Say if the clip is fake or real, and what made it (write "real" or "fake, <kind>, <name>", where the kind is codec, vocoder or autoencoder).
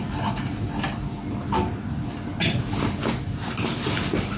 real